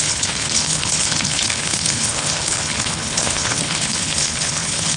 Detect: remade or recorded remade